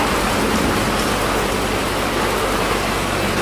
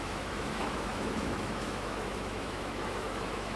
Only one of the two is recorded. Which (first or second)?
first